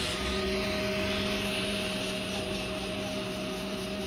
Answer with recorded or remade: recorded